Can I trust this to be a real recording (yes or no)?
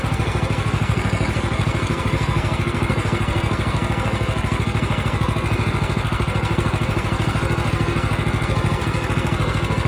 no